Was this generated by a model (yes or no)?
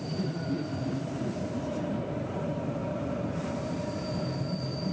yes